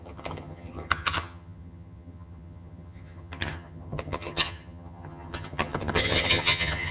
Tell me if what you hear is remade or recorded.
remade